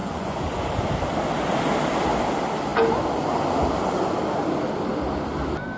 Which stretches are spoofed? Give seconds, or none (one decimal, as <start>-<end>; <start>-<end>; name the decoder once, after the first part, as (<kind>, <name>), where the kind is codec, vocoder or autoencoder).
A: 0.0-0.7 (vocoder, Vocos)